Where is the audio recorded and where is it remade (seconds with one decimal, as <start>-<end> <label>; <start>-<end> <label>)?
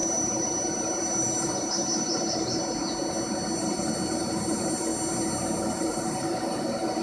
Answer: 0.0-2.6 remade; 2.6-3.6 recorded; 3.6-4.9 remade; 4.9-5.6 recorded; 5.6-7.0 remade